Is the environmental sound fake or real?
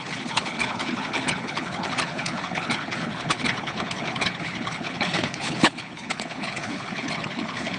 fake